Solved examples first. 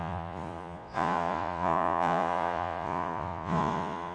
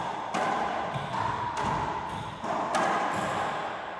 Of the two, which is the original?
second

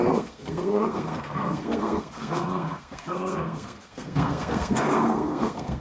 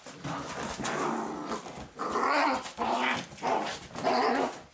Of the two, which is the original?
second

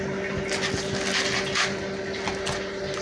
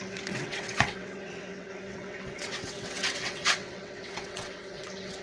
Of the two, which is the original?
first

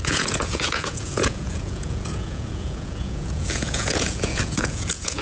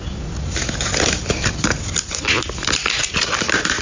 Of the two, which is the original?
second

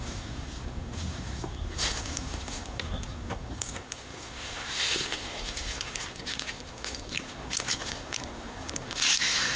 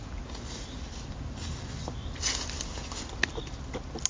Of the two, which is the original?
second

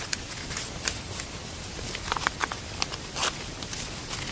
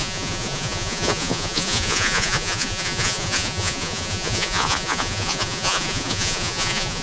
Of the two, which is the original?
first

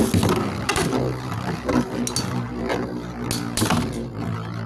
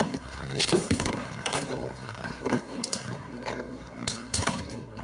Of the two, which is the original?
first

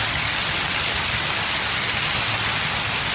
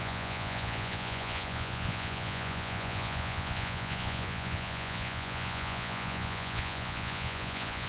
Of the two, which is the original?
first